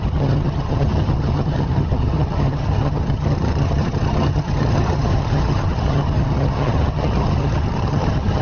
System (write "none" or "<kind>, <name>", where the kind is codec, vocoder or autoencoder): vocoder, HiFi-GAN